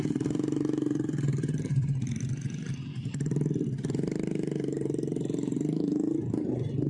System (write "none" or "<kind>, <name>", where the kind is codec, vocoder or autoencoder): vocoder, BigVGAN v2